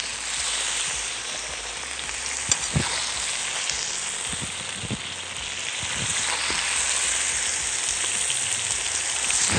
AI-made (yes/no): no